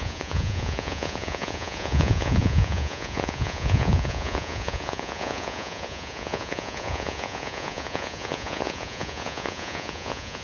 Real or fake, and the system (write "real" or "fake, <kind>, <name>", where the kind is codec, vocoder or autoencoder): fake, vocoder, Vocos